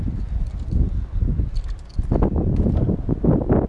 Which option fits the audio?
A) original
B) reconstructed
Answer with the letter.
A